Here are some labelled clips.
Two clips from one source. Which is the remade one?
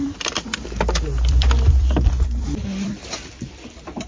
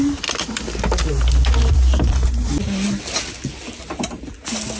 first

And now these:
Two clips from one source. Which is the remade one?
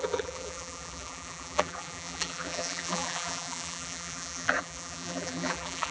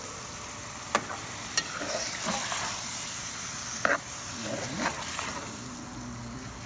first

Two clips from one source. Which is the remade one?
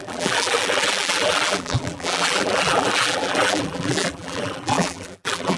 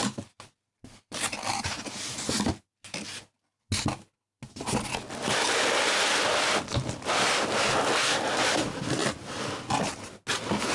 first